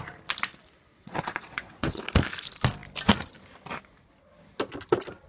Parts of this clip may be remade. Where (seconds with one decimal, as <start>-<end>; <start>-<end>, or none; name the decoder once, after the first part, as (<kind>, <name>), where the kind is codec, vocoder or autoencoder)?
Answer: 0.9-2.0 (vocoder, WaveNeXt)